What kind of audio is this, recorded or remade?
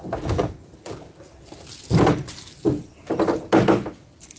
recorded